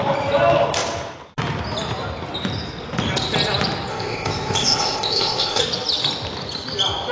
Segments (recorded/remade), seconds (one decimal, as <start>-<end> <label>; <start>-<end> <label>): 0.0-3.9 recorded; 3.9-5.6 remade; 5.6-7.1 recorded